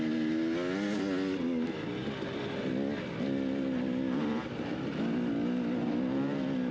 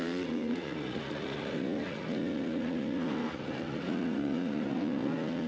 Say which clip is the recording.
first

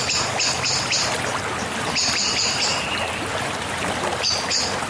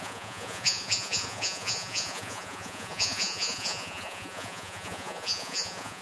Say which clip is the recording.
first